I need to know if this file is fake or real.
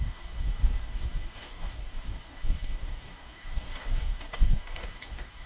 fake